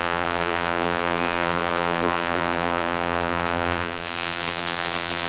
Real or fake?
fake